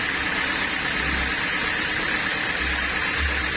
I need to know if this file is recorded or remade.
recorded